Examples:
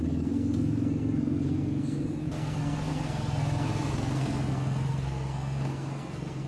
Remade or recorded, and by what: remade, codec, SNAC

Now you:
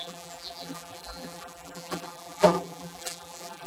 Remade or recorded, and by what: remade, vocoder, BigVGAN v2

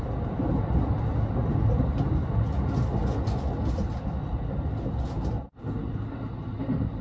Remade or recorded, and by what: recorded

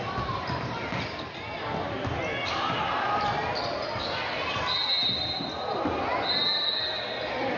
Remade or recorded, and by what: recorded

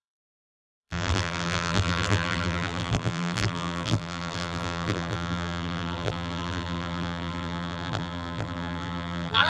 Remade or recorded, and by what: remade, vocoder, BigVGAN v2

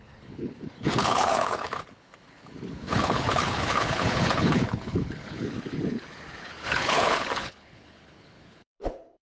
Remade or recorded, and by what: remade, codec, HILCodec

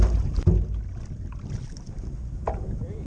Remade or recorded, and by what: recorded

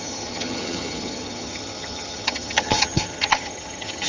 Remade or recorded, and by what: remade, vocoder, HiFi-GAN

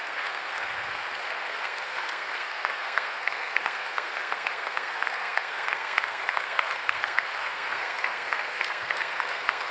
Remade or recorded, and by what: remade, codec, SNAC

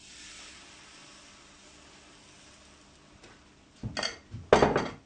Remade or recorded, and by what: recorded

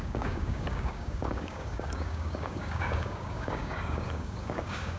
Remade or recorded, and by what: remade, codec, DAC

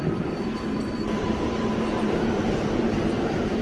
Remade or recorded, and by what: remade, vocoder, BigVGAN v2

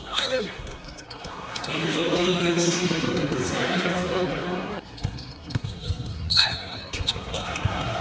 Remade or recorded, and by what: remade, codec, SNAC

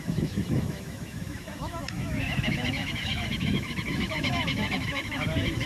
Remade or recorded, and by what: remade, autoencoder, DAC-VAE